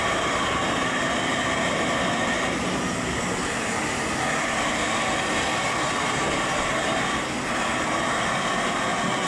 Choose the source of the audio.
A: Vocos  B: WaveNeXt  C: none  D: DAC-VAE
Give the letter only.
C